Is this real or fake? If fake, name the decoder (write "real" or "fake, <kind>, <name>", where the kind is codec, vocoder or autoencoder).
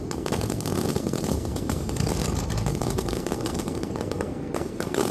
fake, codec, SNAC